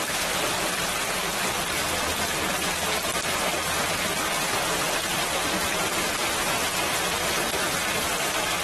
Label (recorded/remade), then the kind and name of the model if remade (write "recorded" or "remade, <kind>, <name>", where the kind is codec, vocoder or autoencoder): recorded